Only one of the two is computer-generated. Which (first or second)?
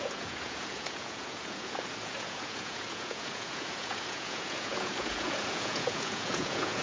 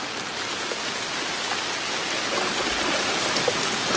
first